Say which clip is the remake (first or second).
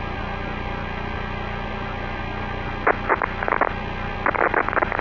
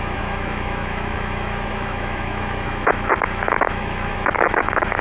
second